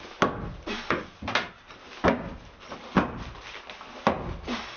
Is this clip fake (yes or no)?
no